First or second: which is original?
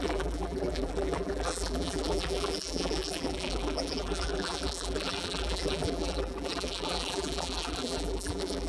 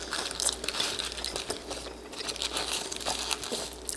second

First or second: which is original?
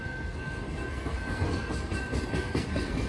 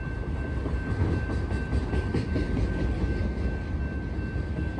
second